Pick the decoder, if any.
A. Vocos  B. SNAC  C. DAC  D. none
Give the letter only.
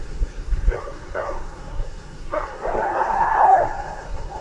B